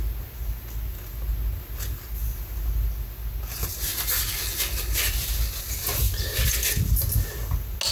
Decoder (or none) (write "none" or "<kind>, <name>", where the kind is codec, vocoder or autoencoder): none